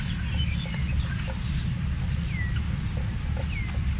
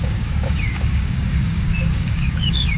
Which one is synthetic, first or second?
second